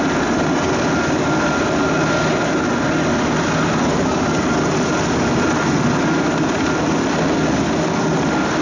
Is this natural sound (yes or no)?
yes